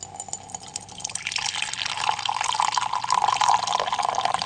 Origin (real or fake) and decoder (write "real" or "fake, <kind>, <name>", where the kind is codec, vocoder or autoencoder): real